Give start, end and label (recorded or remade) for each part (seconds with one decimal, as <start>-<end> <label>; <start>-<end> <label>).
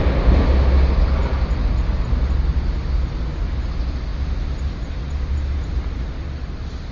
0.0-6.9 recorded